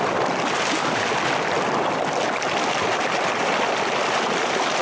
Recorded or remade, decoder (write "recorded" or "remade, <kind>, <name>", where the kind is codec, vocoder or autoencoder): recorded